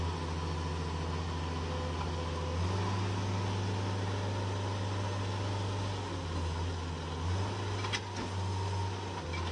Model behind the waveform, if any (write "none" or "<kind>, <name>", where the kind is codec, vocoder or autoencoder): none